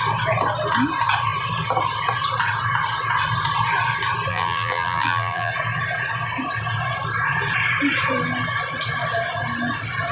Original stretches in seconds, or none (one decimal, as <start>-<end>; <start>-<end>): 0.0-4.3; 5.5-10.1